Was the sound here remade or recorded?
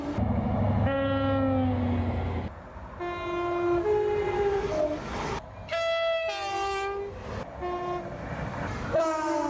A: recorded